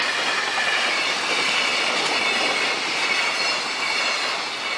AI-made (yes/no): no